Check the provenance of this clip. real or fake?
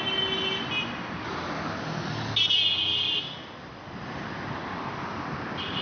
real